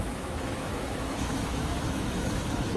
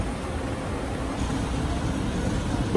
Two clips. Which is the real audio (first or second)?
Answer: second